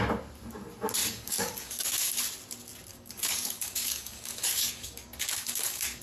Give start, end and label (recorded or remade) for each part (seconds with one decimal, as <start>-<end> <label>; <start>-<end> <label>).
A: 0.0-1.0 recorded; 1.0-2.2 remade; 2.2-2.9 recorded; 2.9-6.0 remade